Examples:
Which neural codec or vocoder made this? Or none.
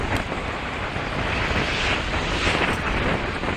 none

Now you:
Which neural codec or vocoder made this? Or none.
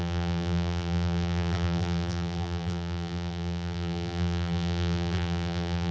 vocoder, BigVGAN v2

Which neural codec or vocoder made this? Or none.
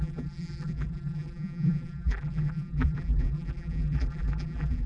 vocoder, BigVGAN v2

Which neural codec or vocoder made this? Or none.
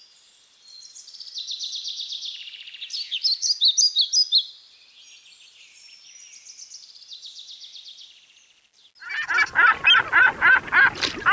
none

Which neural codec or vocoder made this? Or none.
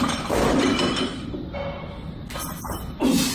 none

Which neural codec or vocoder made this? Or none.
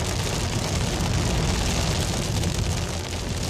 none